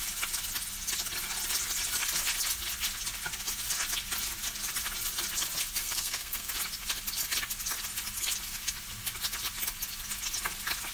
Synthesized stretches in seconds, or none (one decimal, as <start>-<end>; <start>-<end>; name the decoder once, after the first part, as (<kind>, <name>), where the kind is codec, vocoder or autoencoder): 5.8-6.5 (codec, SNAC)